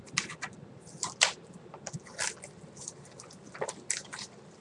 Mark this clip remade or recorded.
remade